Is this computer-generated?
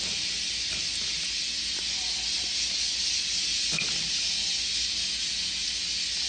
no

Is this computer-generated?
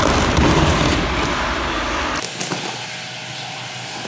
no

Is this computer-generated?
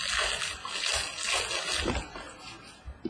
no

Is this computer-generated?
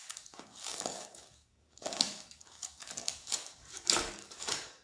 yes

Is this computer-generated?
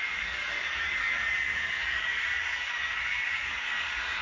yes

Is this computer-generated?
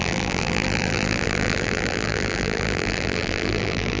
yes